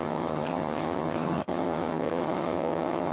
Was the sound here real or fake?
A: fake